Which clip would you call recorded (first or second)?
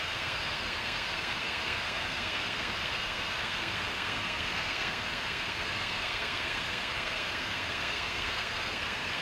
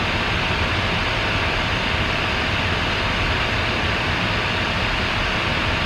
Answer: second